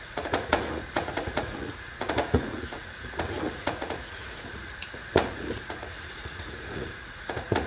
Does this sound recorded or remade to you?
remade